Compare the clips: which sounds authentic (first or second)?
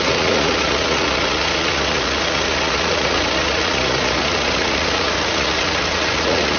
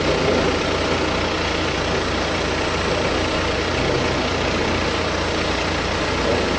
second